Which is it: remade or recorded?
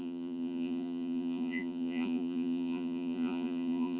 remade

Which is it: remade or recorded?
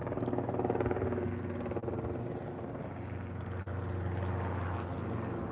recorded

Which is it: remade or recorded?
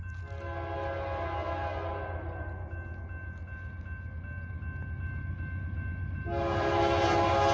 recorded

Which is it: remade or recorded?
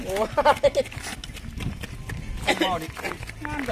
recorded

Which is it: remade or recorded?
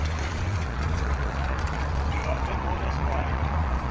remade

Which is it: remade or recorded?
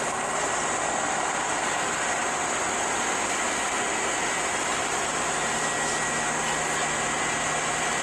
recorded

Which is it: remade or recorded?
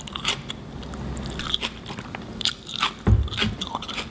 recorded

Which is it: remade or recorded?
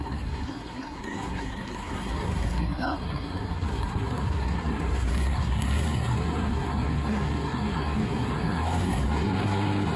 remade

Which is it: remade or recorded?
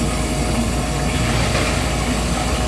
recorded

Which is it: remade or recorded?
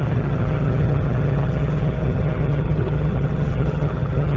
remade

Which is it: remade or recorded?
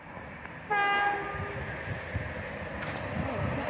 recorded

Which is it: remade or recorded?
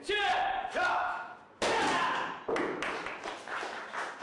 recorded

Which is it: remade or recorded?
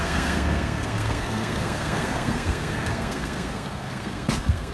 remade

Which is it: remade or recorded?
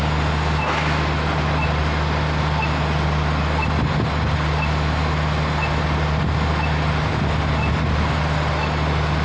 recorded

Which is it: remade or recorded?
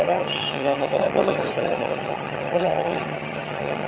remade